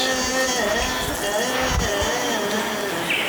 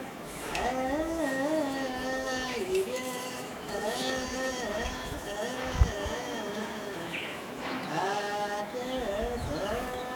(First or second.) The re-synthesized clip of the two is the second